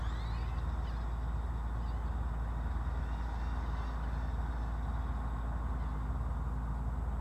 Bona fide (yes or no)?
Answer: yes